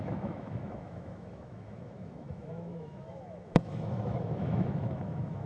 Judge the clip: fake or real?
fake